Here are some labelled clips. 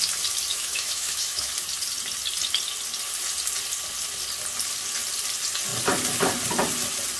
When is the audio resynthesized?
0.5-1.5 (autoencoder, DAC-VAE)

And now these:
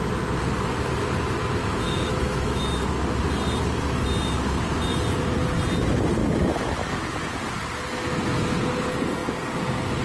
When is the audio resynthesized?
1.6-2.6 (autoencoder, DAC-VAE); 6.2-7.2

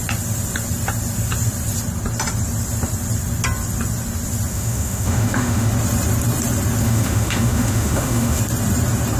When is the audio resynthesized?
4.5-5.7 (autoencoder, DAC-VAE); 6.8-8.4

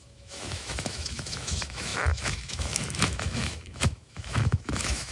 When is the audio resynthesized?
0.0-5.1 (autoencoder, DAC-VAE)

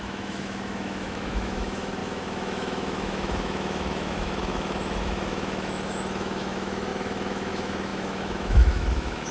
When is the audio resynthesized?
0.0-9.3 (autoencoder, DAC-VAE)

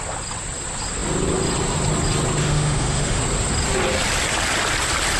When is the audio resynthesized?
2.4-3.2 (autoencoder, DAC-VAE)